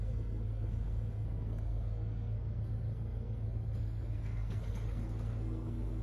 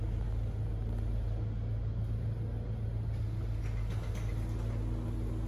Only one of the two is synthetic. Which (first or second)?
first